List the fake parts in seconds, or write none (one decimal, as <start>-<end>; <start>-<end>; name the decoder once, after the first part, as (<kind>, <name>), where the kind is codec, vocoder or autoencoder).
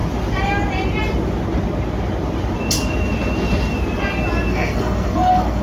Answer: 4.5-5.6 (codec, SNAC)